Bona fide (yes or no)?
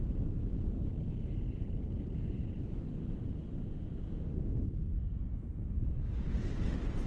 yes